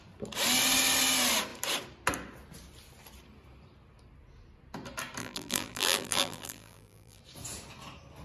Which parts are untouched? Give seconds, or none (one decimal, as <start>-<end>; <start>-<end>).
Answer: 0.0-5.2; 7.2-8.2